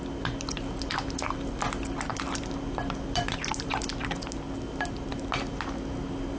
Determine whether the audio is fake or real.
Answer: real